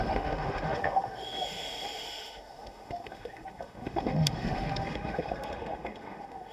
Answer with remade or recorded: remade